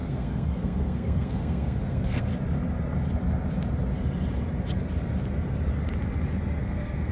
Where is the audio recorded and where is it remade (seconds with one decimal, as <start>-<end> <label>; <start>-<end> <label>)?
0.0-2.3 remade; 2.3-6.6 recorded; 6.6-7.1 remade